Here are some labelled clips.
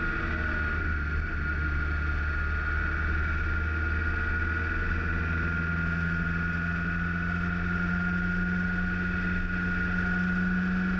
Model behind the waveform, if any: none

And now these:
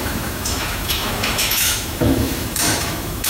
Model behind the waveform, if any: autoencoder, DAC-VAE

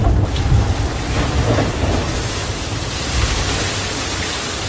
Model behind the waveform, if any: none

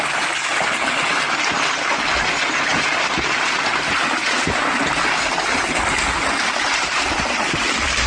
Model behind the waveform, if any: none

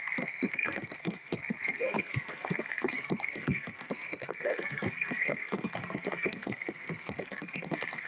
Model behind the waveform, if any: codec, SNAC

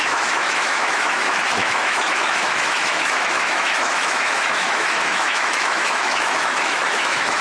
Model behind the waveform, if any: autoencoder, DAC-VAE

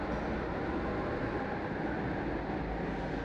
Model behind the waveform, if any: none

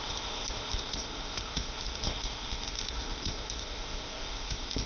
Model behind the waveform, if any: codec, ZipCodec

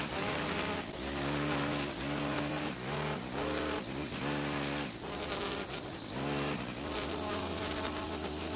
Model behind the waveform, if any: none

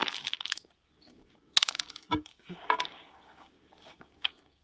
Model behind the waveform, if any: codec, DAC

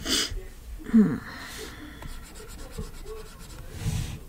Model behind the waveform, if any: none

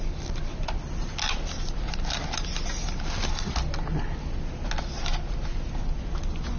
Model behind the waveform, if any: none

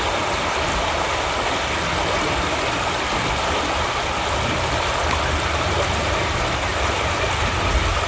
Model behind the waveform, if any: none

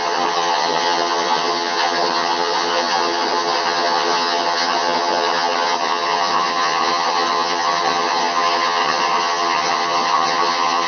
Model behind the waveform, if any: vocoder, HiFi-GAN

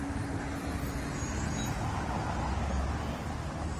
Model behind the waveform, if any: none